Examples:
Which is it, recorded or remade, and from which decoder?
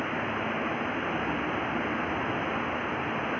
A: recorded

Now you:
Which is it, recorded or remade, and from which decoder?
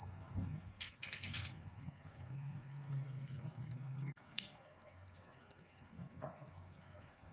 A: remade, codec, SNAC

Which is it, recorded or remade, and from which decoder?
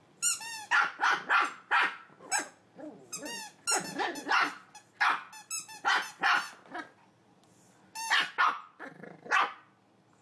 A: recorded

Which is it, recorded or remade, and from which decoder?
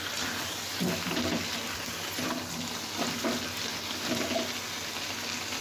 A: recorded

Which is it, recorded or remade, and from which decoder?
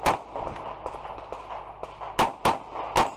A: recorded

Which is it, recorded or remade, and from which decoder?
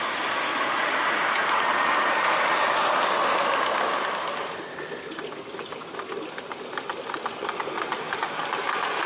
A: recorded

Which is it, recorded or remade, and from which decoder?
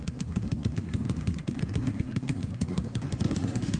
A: remade, codec, SNAC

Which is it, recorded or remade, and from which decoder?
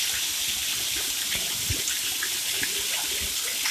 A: recorded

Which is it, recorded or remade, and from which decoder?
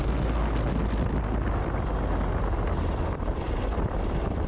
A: recorded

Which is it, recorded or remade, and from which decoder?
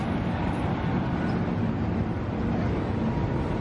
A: recorded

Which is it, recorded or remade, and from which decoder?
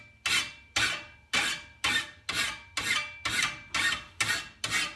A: recorded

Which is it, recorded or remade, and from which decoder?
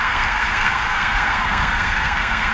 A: remade, codec, SNAC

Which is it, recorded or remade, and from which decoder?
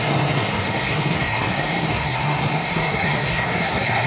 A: remade, codec, SNAC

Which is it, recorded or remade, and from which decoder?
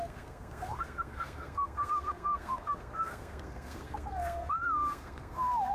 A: remade, codec, SNAC